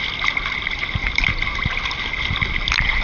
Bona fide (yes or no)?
yes